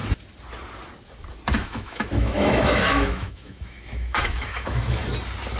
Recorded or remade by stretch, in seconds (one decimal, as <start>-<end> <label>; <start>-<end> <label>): 0.0-1.6 recorded; 1.6-5.0 remade; 5.0-5.6 recorded